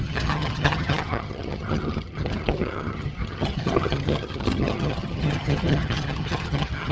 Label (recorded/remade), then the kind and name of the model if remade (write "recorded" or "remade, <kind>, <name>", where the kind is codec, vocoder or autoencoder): remade, vocoder, HiFi-GAN